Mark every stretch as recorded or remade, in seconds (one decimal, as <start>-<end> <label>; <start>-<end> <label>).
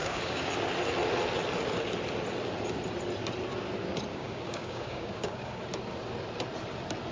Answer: 0.0-0.5 remade; 0.5-4.1 recorded; 4.1-5.6 remade; 5.6-7.1 recorded